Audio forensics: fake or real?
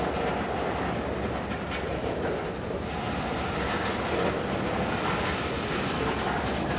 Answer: real